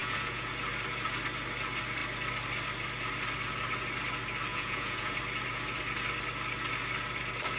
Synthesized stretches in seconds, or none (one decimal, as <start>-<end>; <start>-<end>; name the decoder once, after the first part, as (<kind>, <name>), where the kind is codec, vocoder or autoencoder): 0.0-0.5 (vocoder, Vocos); 4.5-5.2